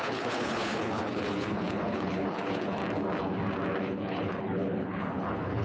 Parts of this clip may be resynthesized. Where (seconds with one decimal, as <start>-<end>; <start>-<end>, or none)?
0.0-2.8; 3.8-5.6